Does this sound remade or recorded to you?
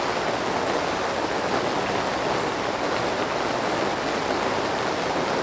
recorded